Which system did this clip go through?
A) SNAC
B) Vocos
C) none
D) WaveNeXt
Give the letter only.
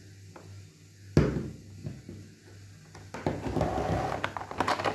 C